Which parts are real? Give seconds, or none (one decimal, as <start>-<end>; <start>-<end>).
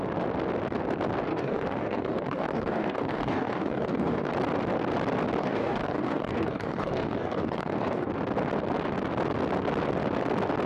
0.0-1.3; 4.3-5.4; 8.1-10.7